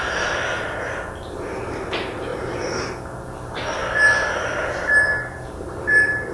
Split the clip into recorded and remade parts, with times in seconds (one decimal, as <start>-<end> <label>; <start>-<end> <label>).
0.0-2.3 recorded; 2.3-2.8 remade; 2.8-6.3 recorded